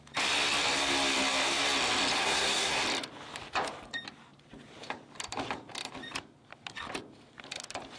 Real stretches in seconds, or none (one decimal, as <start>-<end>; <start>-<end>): 0.0-2.2; 2.8-8.0